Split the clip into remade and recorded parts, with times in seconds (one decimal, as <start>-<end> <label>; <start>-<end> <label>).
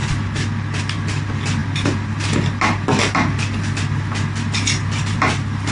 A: 0.0-5.7 recorded